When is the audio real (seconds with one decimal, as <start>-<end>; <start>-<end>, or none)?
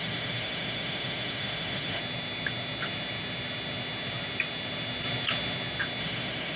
2.0-6.0